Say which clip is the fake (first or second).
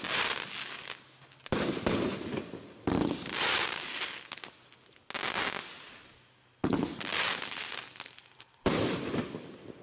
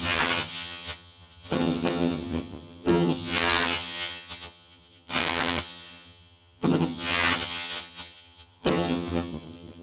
second